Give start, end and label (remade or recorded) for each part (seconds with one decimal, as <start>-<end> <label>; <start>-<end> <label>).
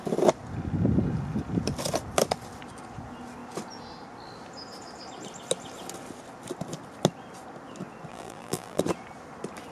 0.0-8.1 recorded; 8.1-8.8 remade; 8.8-9.7 recorded